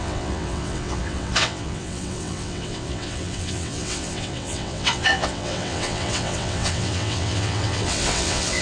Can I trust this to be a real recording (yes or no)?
no